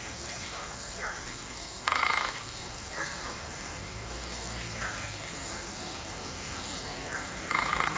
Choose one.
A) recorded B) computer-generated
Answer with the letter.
B